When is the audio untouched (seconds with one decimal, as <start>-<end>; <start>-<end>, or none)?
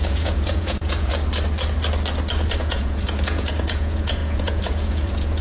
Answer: 1.1-2.6